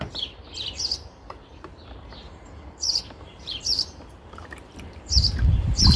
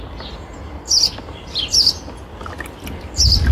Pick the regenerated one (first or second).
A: first